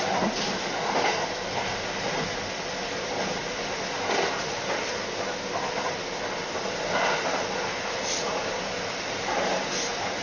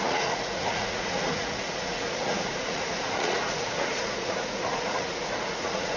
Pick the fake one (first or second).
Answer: second